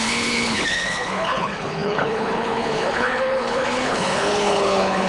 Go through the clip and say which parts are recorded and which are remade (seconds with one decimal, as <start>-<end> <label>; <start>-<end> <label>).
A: 0.0-5.1 remade